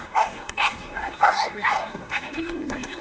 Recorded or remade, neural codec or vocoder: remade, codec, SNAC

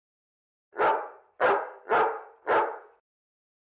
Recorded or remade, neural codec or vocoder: recorded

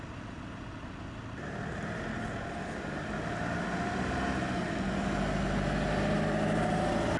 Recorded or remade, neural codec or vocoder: recorded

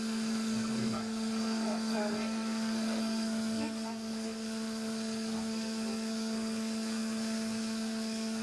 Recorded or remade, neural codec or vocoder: remade, codec, SNAC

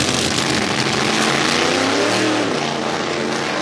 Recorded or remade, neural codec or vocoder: recorded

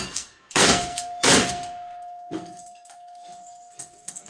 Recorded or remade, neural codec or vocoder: remade, codec, SNAC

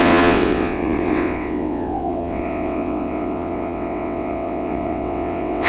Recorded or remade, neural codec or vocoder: remade, vocoder, WaveNeXt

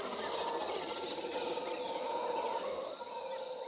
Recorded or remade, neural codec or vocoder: recorded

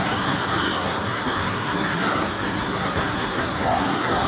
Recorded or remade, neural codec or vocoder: remade, codec, SNAC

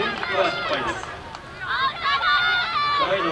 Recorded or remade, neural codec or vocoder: recorded